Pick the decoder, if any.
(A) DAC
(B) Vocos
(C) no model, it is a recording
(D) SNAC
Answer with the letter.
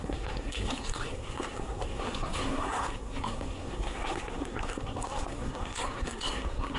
D